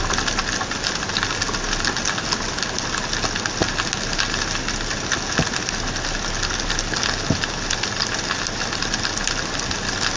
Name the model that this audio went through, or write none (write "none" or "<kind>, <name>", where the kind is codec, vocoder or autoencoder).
none